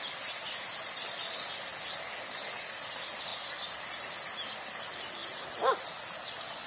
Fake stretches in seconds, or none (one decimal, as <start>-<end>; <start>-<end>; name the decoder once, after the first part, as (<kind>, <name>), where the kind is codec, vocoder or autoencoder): none